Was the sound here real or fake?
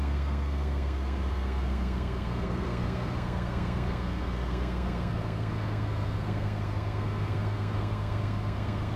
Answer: fake